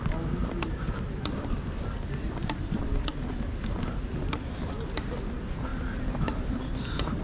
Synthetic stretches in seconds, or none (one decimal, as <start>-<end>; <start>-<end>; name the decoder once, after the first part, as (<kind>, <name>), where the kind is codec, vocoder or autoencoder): 0.4-4.2 (vocoder, BigVGAN v2); 5.7-7.2